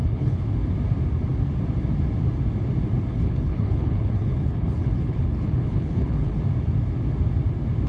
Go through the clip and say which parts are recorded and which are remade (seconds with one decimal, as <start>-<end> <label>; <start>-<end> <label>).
0.0-0.5 remade; 0.5-3.1 recorded; 3.1-6.4 remade; 6.4-7.9 recorded